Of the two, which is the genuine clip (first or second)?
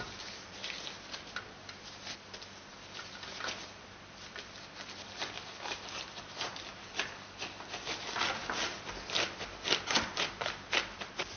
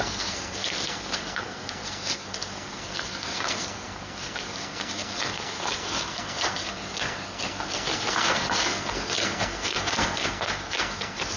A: first